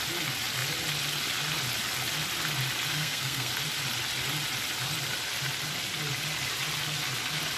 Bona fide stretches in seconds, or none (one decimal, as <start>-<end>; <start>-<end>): 0.0-2.9; 3.5-7.6